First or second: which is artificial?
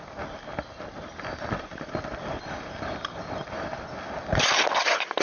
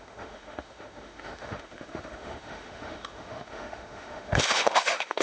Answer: second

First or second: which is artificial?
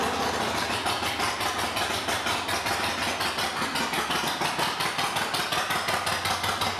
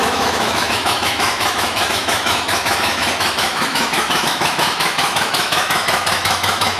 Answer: second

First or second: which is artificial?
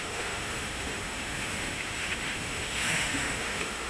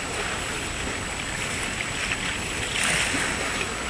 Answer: first